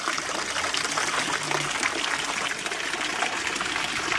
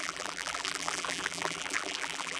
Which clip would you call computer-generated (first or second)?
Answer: second